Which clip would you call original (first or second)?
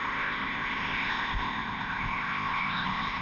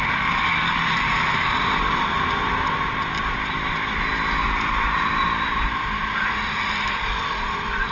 second